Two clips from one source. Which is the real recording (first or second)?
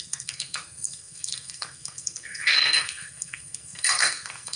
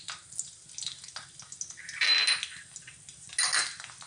second